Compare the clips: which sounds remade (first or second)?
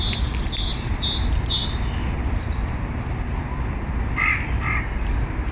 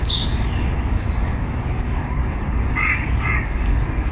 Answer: second